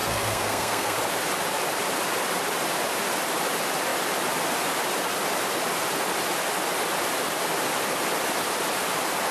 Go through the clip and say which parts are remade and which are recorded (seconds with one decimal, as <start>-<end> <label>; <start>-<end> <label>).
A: 0.0-1.0 remade; 1.0-9.3 recorded